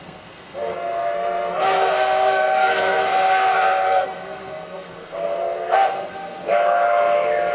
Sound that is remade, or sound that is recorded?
remade